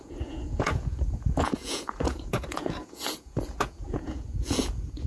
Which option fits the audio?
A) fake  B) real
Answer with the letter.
A